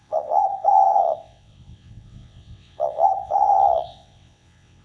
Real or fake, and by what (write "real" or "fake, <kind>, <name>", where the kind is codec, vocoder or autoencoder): fake, vocoder, WaveNeXt